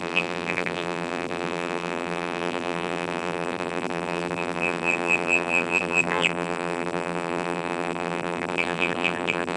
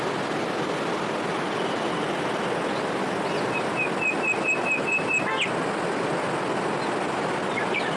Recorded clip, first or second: second